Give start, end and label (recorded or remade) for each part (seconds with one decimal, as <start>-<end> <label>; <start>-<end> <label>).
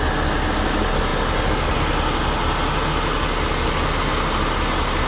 0.0-5.1 recorded